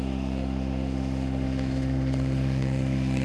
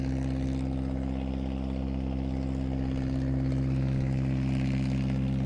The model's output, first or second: first